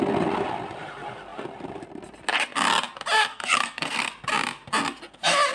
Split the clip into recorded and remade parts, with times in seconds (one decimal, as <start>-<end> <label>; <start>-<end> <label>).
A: 0.0-3.3 recorded; 3.3-4.1 remade; 4.1-5.5 recorded